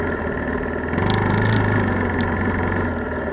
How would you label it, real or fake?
real